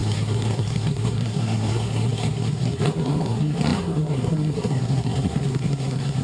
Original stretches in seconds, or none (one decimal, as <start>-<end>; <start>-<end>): none